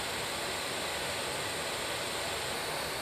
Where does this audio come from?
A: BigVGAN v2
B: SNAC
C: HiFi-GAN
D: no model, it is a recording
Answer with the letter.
D